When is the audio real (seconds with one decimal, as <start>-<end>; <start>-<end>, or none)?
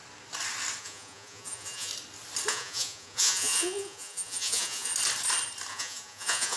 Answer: 0.0-0.8; 1.9-2.5; 4.9-5.7